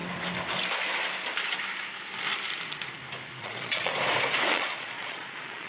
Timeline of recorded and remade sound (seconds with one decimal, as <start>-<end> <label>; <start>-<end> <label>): 0.0-3.4 recorded; 3.4-3.9 remade; 3.9-4.5 recorded; 4.5-5.7 remade